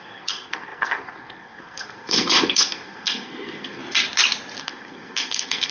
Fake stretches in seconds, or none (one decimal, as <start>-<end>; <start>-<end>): 0.0-3.8; 4.6-5.7